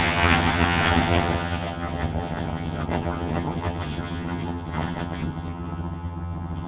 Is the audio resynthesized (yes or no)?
yes